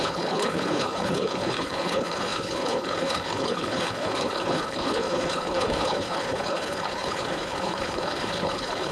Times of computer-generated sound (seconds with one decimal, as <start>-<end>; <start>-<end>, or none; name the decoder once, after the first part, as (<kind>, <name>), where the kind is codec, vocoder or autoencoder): 0.0-8.9 (codec, HILCodec)